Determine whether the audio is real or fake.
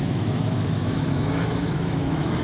fake